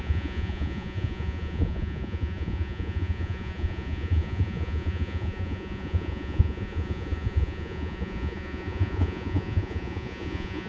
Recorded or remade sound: remade